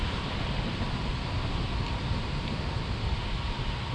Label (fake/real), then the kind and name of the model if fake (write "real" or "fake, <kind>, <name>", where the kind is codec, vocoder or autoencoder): real